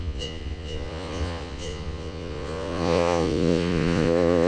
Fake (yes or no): yes